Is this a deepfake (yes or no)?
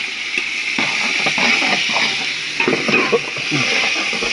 no